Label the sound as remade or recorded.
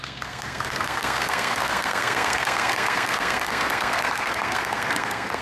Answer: remade